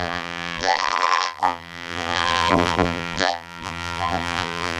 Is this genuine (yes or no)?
no